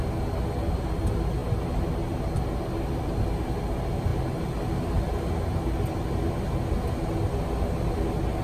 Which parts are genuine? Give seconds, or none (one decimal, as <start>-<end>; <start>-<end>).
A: 0.0-8.4